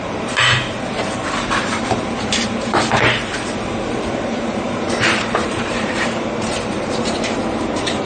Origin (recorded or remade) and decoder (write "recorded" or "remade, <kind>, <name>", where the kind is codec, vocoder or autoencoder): remade, vocoder, BigVGAN v2